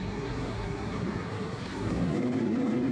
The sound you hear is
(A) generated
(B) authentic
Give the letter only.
A